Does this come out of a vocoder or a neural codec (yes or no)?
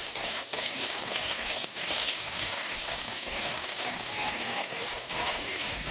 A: yes